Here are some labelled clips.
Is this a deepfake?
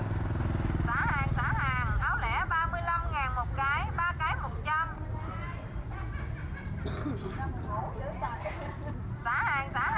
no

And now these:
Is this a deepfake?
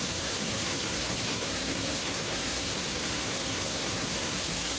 yes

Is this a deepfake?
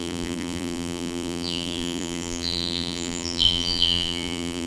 yes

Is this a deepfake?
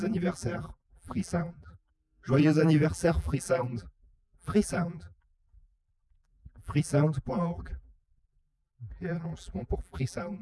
yes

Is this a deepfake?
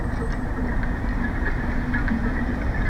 yes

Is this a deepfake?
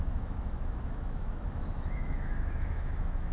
yes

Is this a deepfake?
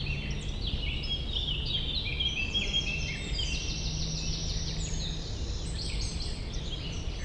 no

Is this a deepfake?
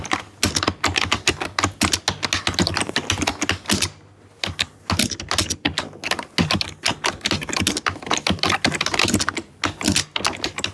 no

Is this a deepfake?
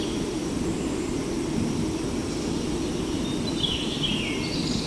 no